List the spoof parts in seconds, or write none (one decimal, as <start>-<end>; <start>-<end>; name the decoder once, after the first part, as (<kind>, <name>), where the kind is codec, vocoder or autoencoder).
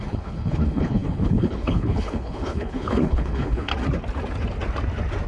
0.0-3.7 (codec, HILCodec)